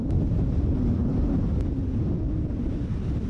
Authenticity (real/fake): real